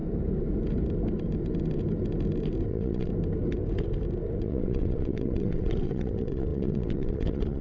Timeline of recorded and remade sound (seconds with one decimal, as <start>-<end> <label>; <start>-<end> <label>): 0.0-2.7 recorded; 2.7-3.1 remade; 3.1-4.4 recorded; 4.4-7.6 remade